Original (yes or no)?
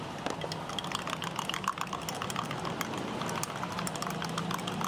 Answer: yes